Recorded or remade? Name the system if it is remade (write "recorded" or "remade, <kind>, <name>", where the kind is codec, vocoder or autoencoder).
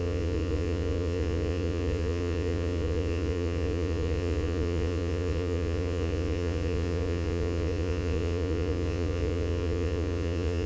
remade, vocoder, Vocos